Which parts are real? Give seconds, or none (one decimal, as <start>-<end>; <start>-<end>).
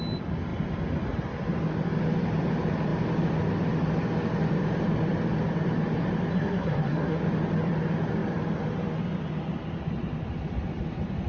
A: 0.0-6.3; 7.2-11.3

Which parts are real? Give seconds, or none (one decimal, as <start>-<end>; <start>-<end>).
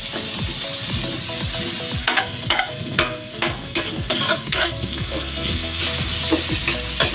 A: 0.0-2.0; 5.8-7.1